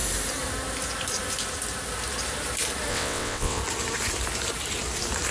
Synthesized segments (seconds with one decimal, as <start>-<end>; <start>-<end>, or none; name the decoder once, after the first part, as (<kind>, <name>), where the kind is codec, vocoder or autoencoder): 2.9-3.6 (vocoder, WaveNeXt)